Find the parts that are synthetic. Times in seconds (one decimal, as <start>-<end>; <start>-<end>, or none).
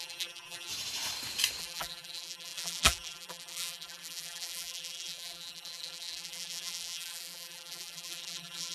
0.0-0.7; 1.6-8.7